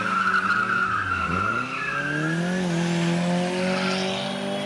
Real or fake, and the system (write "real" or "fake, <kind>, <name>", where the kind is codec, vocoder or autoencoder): real